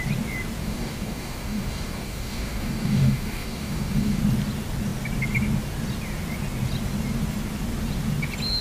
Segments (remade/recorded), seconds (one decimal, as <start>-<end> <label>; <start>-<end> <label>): 0.0-0.6 recorded; 0.6-4.2 remade; 4.2-8.6 recorded